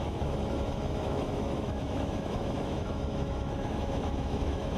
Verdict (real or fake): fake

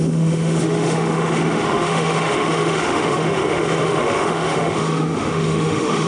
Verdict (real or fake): fake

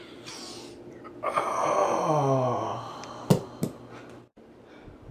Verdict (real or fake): real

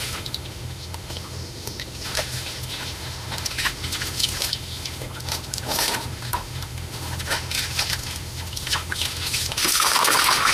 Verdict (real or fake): fake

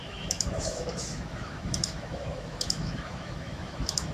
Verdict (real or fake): fake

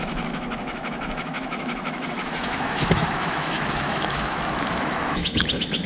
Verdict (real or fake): fake